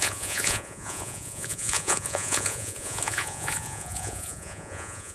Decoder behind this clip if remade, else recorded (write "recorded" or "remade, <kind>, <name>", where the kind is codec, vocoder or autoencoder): remade, vocoder, Vocos